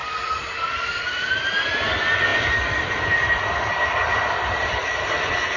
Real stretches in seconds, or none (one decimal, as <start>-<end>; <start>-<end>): 1.3-2.3; 5.0-5.6